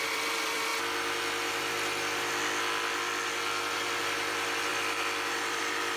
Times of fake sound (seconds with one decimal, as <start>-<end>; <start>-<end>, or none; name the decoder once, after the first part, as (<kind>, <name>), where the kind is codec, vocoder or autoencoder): 0.0-0.7 (vocoder, BigVGAN v2); 4.0-6.0